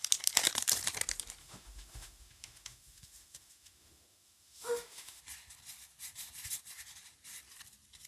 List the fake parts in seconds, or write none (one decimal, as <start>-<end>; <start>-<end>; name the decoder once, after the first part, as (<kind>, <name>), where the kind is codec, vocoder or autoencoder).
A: 1.4-5.2 (autoencoder, DAC-VAE)